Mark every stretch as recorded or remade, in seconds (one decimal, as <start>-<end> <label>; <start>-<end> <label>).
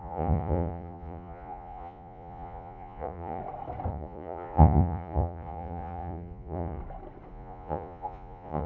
0.0-3.4 remade; 3.4-3.9 recorded; 3.9-6.8 remade; 6.8-7.3 recorded; 7.3-8.7 remade